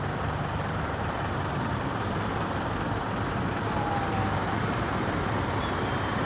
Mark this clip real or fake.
fake